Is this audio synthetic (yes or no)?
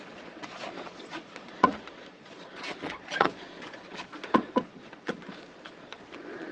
yes